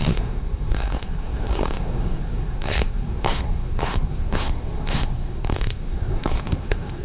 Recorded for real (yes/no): no